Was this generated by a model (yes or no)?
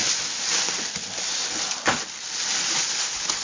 no